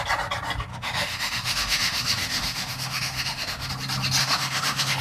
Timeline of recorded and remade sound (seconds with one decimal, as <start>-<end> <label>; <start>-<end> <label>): 0.0-0.7 recorded; 0.7-3.7 remade; 3.7-4.2 recorded; 4.2-5.0 remade